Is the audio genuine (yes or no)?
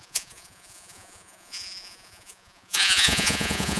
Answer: no